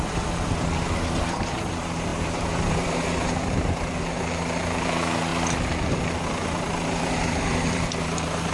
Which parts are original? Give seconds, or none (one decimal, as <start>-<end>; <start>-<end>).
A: 5.3-6.2